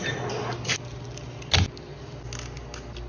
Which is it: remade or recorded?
recorded